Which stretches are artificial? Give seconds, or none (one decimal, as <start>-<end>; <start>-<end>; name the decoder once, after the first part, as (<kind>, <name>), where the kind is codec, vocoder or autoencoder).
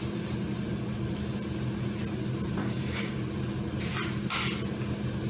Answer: 2.6-3.1 (codec, DAC)